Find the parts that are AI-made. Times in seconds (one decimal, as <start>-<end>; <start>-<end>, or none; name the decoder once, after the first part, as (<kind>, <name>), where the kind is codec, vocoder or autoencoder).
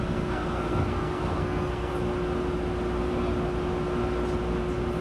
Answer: 0.0-1.9 (codec, SNAC)